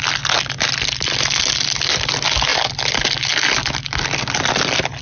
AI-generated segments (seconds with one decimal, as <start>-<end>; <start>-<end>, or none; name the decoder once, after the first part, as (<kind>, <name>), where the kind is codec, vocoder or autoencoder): none